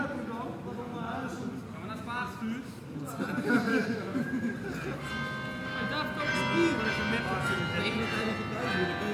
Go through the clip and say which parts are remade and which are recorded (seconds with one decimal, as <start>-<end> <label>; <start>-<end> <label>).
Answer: 0.0-3.7 recorded; 3.7-4.5 remade; 4.5-9.1 recorded